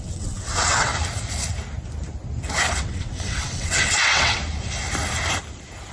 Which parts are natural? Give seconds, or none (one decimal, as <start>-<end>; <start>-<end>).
0.9-2.7; 4.4-5.9